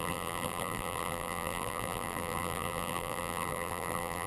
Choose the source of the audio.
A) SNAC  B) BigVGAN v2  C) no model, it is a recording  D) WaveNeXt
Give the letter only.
B